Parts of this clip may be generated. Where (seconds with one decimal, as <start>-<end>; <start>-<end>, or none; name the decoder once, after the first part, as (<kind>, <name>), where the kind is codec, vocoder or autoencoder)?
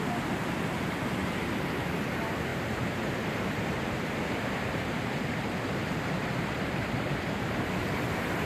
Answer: 2.5-7.5 (vocoder, BigVGAN v2)